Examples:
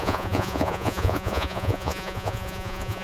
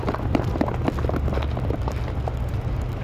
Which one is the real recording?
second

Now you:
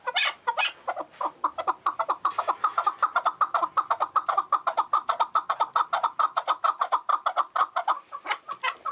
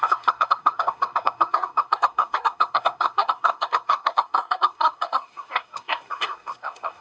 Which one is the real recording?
first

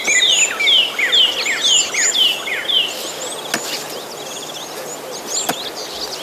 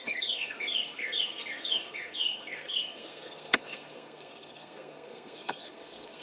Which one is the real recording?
first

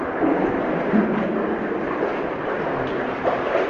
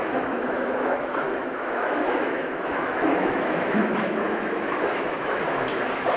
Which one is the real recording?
first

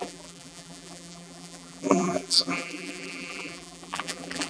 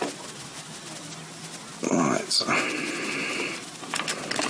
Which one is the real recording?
second